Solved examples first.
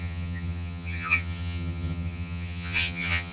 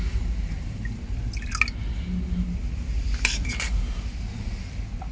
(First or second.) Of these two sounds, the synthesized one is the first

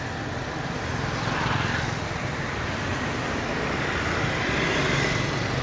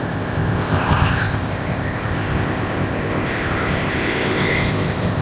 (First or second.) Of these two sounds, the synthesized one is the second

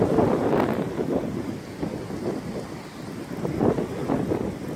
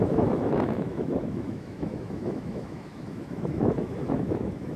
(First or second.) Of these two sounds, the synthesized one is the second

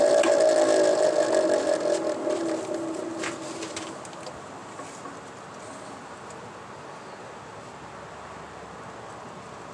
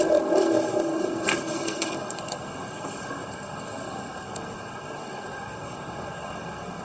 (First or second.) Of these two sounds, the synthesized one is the second